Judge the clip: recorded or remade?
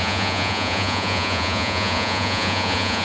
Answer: remade